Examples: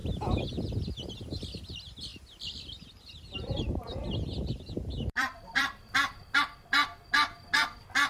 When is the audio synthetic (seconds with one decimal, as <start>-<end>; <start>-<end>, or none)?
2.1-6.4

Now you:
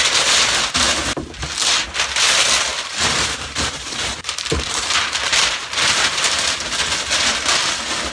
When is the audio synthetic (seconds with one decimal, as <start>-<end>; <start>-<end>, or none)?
2.7-6.6

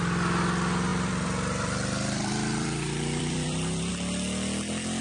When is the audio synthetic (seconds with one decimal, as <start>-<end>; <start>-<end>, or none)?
0.9-3.9